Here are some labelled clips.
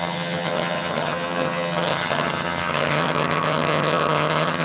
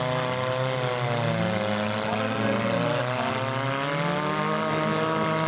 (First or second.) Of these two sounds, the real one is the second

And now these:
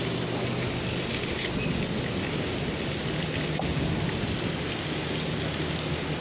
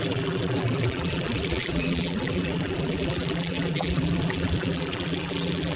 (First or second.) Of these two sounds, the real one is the first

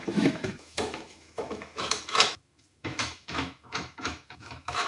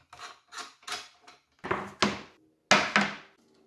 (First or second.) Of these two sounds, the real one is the second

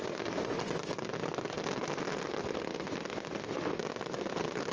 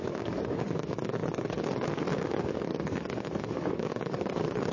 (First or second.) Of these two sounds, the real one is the first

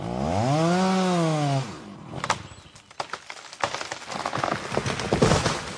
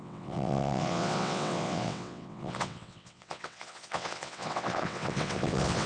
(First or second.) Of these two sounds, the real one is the first